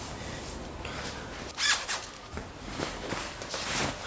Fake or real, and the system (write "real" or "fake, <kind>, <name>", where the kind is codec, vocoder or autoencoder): real